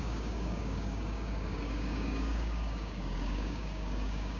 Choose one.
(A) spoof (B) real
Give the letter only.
A